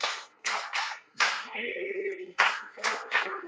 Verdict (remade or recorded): remade